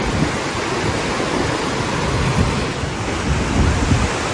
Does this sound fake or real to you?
real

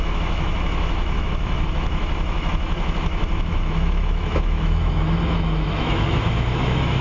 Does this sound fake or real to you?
fake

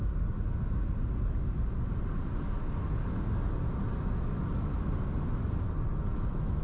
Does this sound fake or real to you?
real